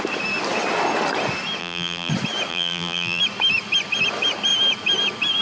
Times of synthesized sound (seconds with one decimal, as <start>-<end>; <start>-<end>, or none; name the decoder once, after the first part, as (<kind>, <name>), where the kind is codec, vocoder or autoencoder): 1.6-2.1 (vocoder, BigVGAN v2); 2.5-3.2